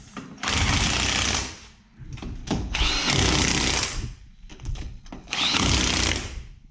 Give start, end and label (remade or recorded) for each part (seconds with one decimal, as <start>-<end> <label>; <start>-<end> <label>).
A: 0.0-2.4 recorded; 2.4-2.9 remade; 2.9-4.5 recorded; 4.5-5.7 remade; 5.7-6.7 recorded